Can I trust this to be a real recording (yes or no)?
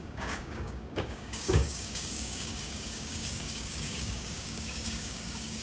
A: no